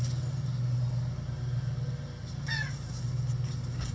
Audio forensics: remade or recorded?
recorded